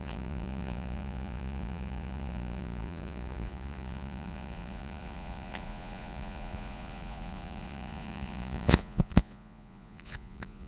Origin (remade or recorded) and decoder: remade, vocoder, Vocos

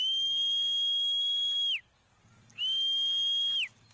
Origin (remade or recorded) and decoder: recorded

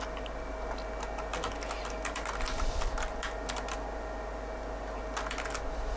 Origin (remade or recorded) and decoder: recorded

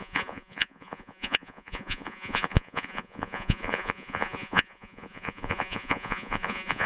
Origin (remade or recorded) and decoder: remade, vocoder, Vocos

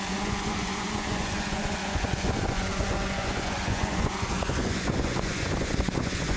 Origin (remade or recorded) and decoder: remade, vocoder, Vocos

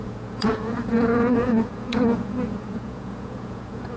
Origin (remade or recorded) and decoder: remade, vocoder, Vocos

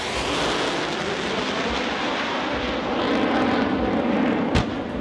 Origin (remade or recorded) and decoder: recorded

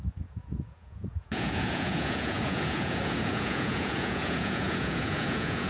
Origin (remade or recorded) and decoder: remade, vocoder, Vocos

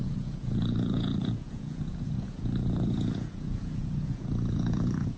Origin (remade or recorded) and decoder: remade, vocoder, Vocos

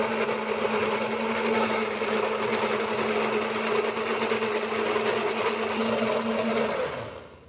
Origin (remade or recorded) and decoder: recorded